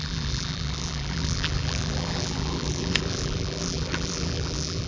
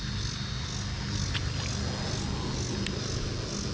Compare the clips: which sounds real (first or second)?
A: second